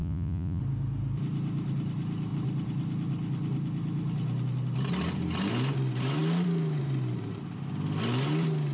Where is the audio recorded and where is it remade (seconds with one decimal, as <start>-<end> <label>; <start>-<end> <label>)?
0.0-0.6 remade; 0.6-8.7 recorded